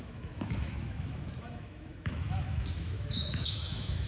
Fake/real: fake